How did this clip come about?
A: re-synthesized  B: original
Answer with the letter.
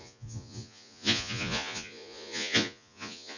A